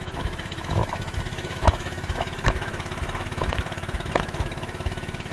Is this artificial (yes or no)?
yes